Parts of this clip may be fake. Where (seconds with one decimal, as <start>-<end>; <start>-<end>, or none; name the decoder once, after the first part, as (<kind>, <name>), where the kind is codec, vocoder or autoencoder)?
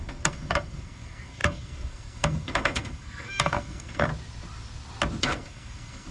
0.0-4.1 (codec, SNAC); 5.2-6.1